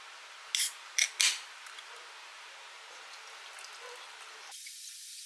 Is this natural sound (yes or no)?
yes